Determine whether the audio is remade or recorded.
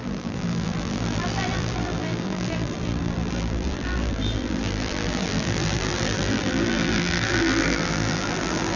remade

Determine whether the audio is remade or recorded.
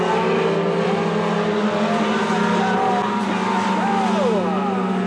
recorded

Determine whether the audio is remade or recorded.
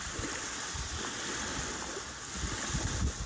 recorded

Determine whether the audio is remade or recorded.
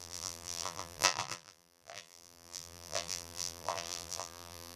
remade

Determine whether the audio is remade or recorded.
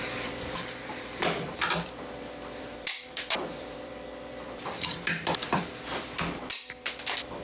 remade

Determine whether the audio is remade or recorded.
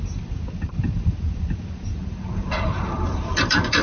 remade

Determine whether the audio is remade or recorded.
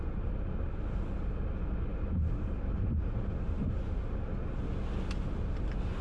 recorded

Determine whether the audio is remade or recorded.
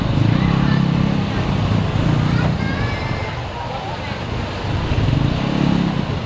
recorded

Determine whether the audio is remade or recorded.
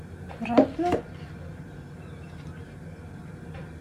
recorded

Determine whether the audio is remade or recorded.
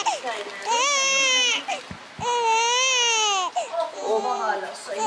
recorded